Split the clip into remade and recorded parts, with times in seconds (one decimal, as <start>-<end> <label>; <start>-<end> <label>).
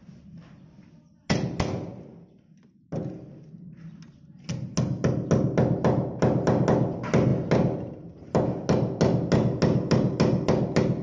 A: 0.0-11.0 recorded